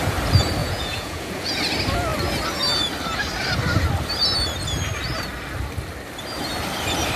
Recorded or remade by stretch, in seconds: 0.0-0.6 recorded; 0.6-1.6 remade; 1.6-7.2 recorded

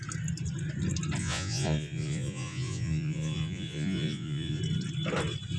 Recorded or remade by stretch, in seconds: 0.0-1.2 recorded; 1.2-4.6 remade; 4.6-5.6 recorded

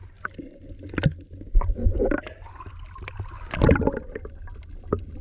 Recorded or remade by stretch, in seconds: 0.0-5.2 recorded